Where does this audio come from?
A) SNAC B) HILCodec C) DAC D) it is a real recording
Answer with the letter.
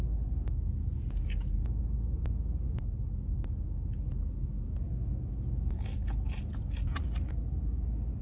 D